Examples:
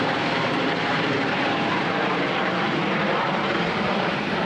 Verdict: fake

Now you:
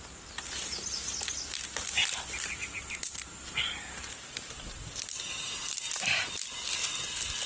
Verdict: real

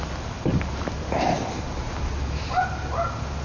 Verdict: real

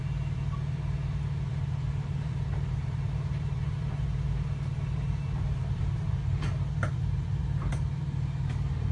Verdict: fake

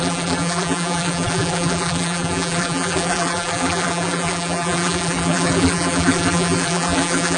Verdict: fake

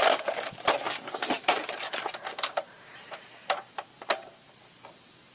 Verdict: fake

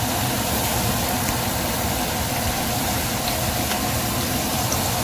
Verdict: real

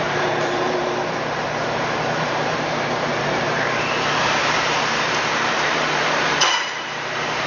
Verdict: fake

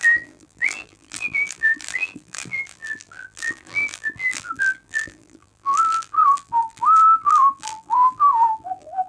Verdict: fake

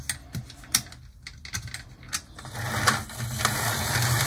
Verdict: real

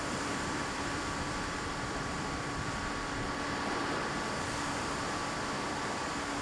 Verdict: fake